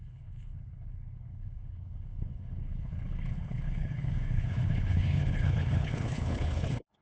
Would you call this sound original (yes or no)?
no